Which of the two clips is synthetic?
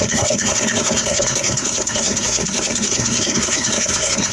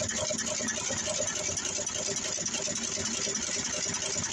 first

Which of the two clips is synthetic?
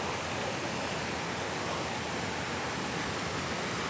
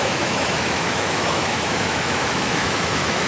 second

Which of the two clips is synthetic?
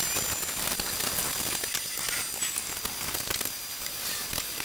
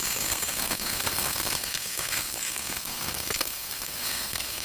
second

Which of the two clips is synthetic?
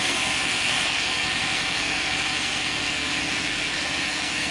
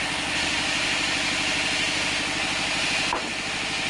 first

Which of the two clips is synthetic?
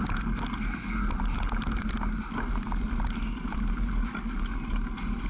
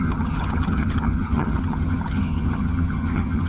second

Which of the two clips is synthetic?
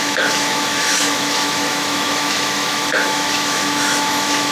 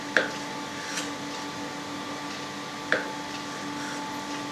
first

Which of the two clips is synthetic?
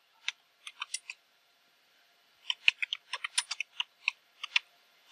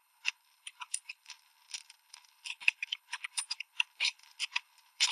second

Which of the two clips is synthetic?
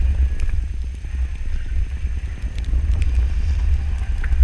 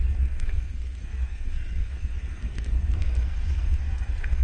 second